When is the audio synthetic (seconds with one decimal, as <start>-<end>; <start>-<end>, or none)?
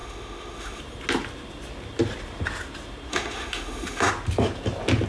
0.0-0.8; 3.1-4.1